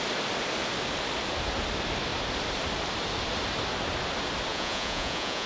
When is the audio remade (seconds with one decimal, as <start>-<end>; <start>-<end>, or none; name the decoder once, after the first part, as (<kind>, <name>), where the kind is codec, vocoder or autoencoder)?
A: 4.5-5.5 (vocoder, Vocos)